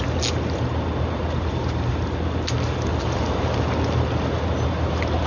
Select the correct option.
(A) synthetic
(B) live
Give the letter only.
B